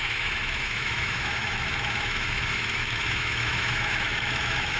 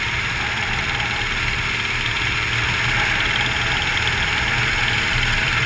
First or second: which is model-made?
first